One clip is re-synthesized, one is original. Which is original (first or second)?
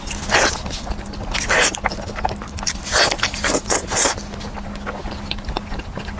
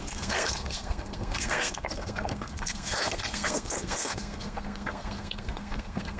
first